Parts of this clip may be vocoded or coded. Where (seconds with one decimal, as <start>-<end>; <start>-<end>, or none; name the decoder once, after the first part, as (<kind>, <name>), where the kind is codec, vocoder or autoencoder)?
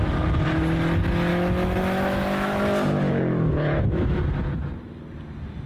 1.3-2.6 (autoencoder, DAC-VAE); 3.3-4.2